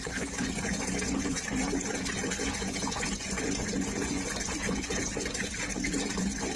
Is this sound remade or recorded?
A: remade